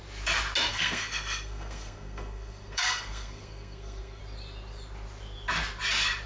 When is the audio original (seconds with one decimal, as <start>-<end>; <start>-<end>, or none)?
0.0-0.7; 4.2-6.3